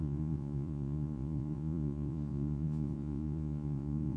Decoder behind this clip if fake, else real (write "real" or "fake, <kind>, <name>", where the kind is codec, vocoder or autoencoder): fake, vocoder, Vocos